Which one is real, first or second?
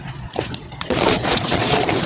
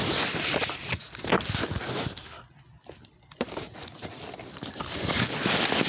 second